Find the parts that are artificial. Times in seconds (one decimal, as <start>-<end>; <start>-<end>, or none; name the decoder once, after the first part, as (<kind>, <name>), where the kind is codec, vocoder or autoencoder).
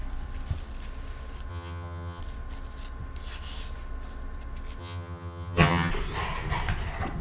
1.5-2.2 (vocoder, HiFi-GAN); 4.8-5.9